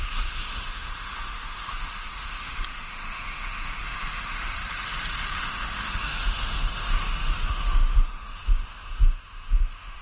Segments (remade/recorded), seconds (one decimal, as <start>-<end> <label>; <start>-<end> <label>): 0.0-4.6 remade; 4.6-5.4 recorded; 5.4-10.0 remade